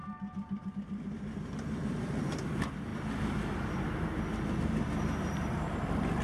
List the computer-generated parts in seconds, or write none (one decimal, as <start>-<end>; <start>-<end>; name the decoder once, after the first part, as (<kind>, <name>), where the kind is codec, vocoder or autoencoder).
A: 0.0-0.7 (vocoder, BigVGAN v2)